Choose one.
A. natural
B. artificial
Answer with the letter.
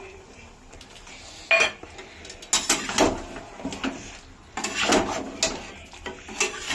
A